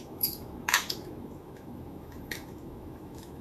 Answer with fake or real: fake